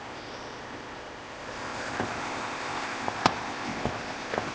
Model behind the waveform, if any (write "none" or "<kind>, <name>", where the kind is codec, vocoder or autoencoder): codec, ZipCodec